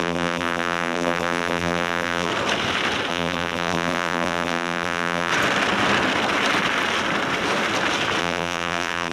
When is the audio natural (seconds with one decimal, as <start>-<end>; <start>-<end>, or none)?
2.3-3.1; 5.3-8.2